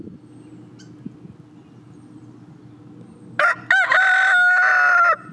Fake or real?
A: real